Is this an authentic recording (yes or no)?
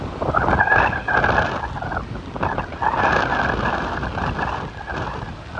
yes